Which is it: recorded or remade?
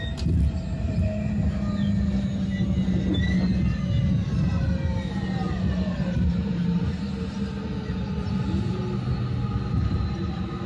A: recorded